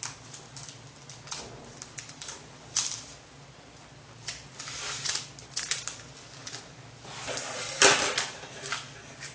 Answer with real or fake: real